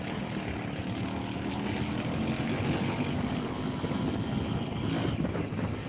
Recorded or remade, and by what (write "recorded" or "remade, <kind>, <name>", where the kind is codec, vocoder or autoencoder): recorded